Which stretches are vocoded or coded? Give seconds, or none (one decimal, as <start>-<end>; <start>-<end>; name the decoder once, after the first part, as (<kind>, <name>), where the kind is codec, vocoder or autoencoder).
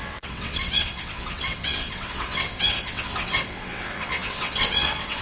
0.0-5.2 (vocoder, WaveNeXt)